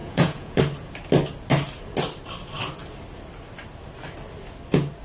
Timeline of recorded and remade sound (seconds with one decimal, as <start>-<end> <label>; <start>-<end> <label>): 0.0-0.6 remade; 0.6-5.0 recorded